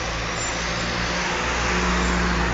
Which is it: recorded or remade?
recorded